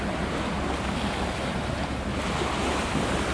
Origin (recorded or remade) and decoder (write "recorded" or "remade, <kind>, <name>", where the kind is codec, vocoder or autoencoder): recorded